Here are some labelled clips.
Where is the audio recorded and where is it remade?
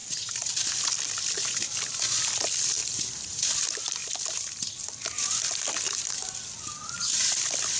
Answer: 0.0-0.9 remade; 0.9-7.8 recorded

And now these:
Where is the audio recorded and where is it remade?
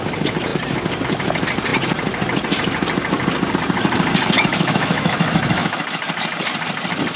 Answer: 0.0-4.5 recorded; 4.5-5.8 remade; 5.8-7.2 recorded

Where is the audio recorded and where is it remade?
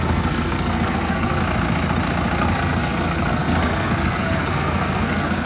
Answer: 0.0-1.4 remade; 1.4-2.4 recorded; 2.4-5.5 remade